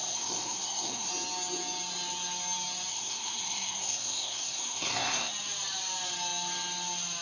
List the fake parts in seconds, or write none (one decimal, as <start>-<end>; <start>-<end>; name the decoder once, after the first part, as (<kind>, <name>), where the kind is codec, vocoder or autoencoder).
0.0-1.1 (codec, SNAC); 2.9-5.3